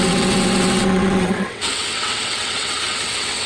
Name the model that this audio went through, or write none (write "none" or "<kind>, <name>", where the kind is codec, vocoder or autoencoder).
vocoder, WaveNeXt